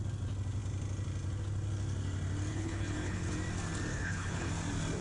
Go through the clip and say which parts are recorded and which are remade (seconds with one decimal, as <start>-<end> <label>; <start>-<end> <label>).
0.0-2.5 recorded; 2.5-3.3 remade; 3.3-3.9 recorded; 3.9-4.5 remade; 4.5-5.0 recorded